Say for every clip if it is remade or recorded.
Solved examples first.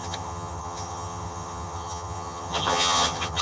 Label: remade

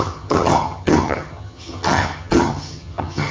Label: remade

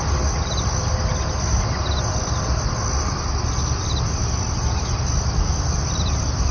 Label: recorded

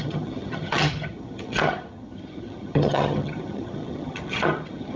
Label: remade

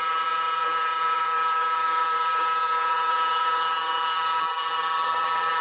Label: remade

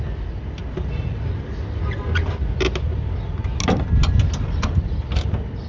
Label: recorded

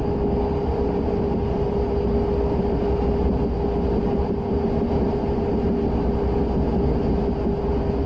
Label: recorded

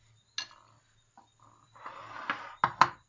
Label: recorded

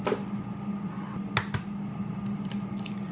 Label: recorded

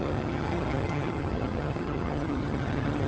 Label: remade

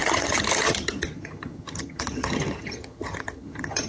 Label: remade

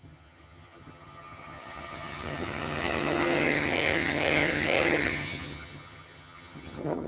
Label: remade